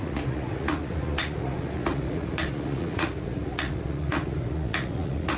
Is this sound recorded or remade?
remade